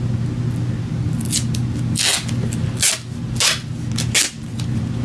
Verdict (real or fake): real